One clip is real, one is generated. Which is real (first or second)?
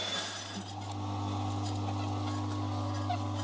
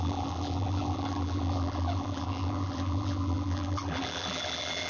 first